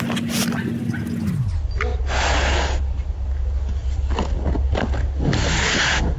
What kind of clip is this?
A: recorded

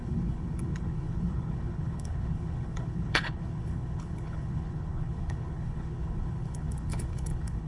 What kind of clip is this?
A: remade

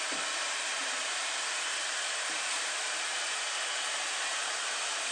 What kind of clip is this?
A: remade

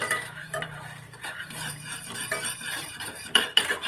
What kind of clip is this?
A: remade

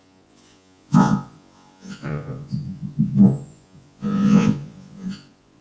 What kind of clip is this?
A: remade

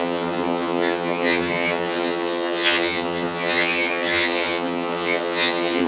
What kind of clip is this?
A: remade